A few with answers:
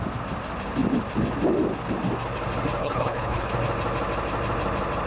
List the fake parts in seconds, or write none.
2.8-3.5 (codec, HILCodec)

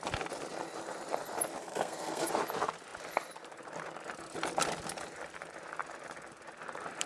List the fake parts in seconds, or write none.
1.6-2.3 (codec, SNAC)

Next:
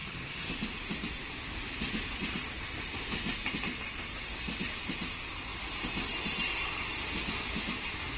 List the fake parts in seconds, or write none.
0.0-0.5 (vocoder, HiFi-GAN)